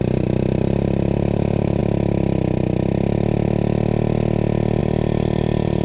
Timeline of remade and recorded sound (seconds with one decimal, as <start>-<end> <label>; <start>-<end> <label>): 0.0-1.8 remade; 1.8-4.8 recorded; 4.8-5.8 remade